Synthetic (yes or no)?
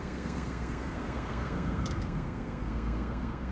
yes